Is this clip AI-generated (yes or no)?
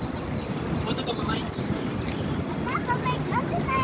no